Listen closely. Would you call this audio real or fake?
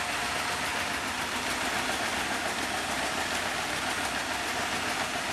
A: real